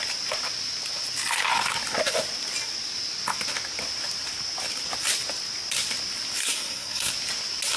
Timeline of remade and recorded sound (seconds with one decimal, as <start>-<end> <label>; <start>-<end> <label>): 0.0-6.4 recorded; 6.4-7.1 remade; 7.1-7.8 recorded